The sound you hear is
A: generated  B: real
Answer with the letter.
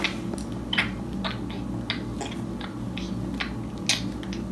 B